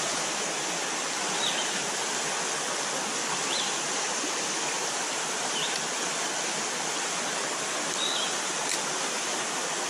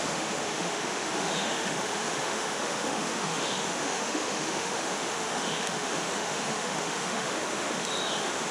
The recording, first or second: first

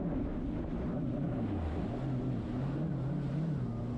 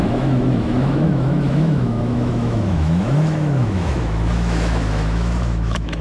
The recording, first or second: first